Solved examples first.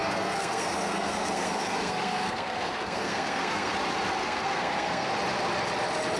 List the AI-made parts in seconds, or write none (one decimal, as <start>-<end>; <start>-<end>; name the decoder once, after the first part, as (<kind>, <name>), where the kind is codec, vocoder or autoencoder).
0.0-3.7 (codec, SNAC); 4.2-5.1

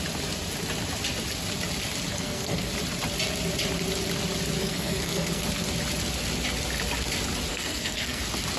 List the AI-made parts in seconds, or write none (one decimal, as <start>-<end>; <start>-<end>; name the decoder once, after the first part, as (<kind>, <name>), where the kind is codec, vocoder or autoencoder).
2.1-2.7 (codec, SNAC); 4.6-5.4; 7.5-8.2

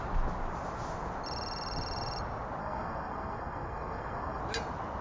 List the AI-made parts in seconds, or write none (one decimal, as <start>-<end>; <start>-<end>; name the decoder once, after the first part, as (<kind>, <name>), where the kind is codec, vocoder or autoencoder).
2.6-4.4 (codec, SNAC)

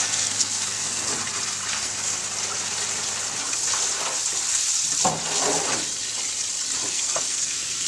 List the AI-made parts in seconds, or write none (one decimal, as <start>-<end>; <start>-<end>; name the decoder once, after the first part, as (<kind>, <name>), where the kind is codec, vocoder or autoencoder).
0.0-1.1 (codec, SNAC); 1.7-2.2; 6.9-7.9